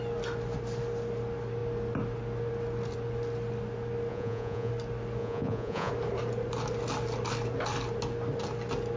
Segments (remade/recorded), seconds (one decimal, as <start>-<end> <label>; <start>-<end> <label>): 0.0-4.1 recorded; 4.1-4.7 remade; 4.7-5.2 recorded; 5.2-5.9 remade; 5.9-9.0 recorded